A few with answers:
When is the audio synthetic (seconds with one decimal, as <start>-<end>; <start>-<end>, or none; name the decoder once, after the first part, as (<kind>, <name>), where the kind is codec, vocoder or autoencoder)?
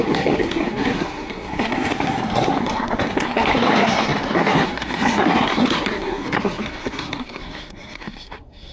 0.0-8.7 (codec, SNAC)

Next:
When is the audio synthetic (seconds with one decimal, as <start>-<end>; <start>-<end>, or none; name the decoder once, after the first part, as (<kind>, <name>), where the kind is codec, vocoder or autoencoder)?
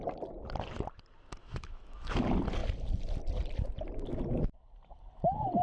1.4-2.2 (autoencoder, DAC-VAE)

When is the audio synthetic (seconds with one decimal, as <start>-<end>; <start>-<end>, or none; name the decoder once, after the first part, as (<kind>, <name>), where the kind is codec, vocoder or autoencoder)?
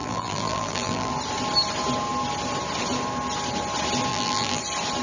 0.0-1.1 (vocoder, BigVGAN v2); 4.1-4.6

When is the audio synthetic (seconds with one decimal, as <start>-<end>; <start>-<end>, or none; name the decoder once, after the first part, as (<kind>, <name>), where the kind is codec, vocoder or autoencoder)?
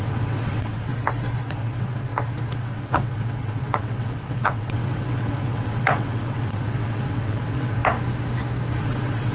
0.0-0.9 (vocoder, WaveNeXt); 1.5-2.1; 2.6-7.8; 8.8-9.3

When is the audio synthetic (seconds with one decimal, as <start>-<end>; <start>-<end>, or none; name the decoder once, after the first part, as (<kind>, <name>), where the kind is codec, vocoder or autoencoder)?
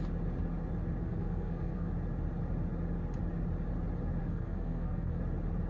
1.0-1.9 (codec, SNAC); 4.2-5.2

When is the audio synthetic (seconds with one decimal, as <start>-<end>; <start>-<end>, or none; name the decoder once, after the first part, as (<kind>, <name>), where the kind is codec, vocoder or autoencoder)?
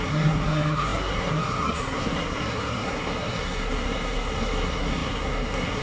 0.0-5.8 (codec, SNAC)